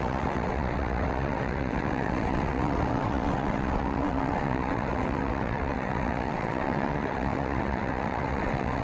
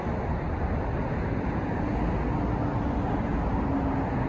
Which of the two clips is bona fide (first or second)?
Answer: second